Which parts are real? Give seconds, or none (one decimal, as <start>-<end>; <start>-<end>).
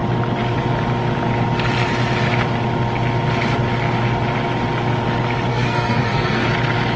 0.0-5.5; 6.5-7.0